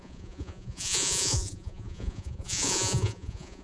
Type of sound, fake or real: fake